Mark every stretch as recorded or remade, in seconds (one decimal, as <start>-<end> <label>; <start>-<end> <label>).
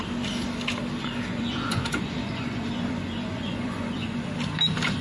0.0-1.3 recorded; 1.3-4.3 remade; 4.3-5.0 recorded